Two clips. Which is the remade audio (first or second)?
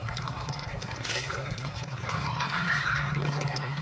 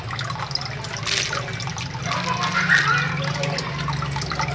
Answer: first